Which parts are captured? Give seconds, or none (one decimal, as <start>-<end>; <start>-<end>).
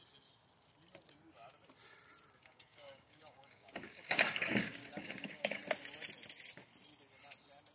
0.0-2.4; 5.6-7.7